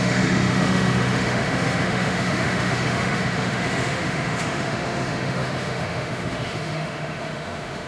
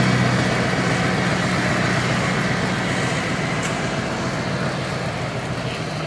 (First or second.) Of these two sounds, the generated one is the first